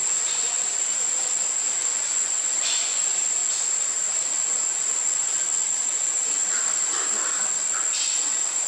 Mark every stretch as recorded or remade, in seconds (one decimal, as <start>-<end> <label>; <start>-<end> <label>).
0.0-0.8 remade; 0.8-1.8 recorded; 1.8-3.0 remade; 3.0-8.7 recorded